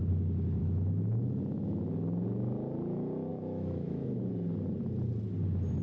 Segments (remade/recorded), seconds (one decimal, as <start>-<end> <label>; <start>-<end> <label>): 0.0-0.6 recorded; 0.6-1.4 remade; 1.4-3.3 recorded; 3.3-4.3 remade; 4.3-5.8 recorded